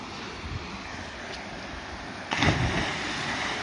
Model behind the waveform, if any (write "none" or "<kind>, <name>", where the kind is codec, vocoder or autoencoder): none